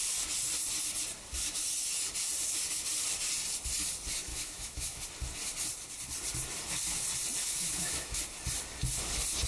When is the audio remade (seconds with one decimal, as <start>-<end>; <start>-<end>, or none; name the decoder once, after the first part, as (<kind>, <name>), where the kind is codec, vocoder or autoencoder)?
4.3-5.0 (autoencoder, DAC-VAE); 7.4-8.2